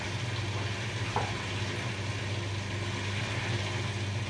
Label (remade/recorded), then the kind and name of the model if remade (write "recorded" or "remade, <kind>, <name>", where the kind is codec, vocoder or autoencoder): recorded